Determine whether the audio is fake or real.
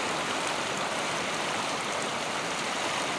real